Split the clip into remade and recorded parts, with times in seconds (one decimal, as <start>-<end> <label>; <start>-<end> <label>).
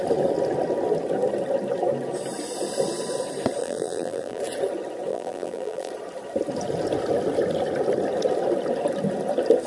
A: 0.0-3.6 recorded; 3.6-4.4 remade; 4.4-5.1 recorded; 5.1-5.9 remade; 5.9-9.7 recorded